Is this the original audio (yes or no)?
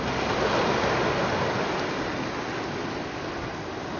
yes